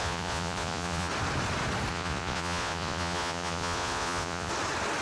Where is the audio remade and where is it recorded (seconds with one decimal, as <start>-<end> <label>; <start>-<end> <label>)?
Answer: 0.0-1.1 remade; 1.1-1.9 recorded; 1.9-4.5 remade; 4.5-5.0 recorded